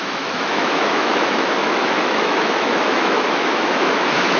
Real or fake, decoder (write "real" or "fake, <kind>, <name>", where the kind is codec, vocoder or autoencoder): fake, autoencoder, DAC-VAE